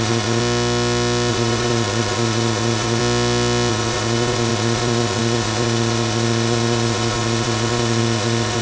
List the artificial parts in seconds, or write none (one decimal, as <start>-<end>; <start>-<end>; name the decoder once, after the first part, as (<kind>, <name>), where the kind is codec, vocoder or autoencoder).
0.0-0.4 (vocoder, Vocos); 1.3-3.0; 3.7-8.6